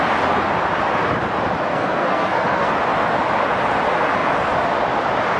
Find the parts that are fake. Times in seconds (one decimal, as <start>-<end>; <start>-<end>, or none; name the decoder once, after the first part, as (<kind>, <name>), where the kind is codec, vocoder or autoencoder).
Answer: 1.7-2.7 (codec, SNAC)